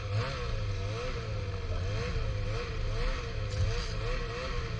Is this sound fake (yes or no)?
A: no